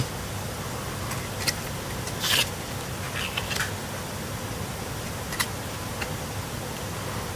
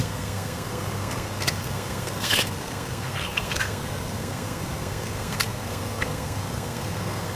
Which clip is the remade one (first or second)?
second